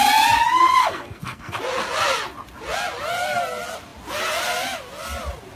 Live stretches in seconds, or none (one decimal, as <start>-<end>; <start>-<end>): 0.0-0.8; 1.6-5.6